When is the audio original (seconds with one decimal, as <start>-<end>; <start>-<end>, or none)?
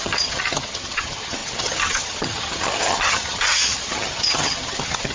none